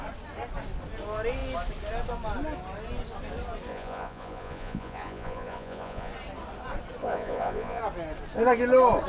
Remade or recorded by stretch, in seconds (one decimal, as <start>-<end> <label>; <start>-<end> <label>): 0.0-3.7 recorded; 3.7-6.1 remade; 6.1-7.0 recorded; 7.0-7.8 remade; 7.8-9.1 recorded